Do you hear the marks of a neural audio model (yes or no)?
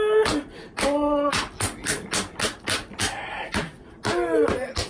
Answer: no